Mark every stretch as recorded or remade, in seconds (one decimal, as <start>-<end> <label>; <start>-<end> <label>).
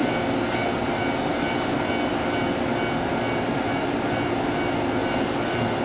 0.0-5.0 recorded; 5.0-5.8 remade